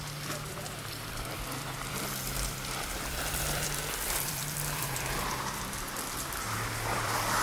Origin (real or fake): fake